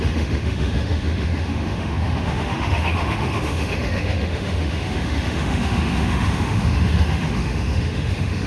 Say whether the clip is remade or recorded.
remade